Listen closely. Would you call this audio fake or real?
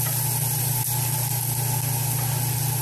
real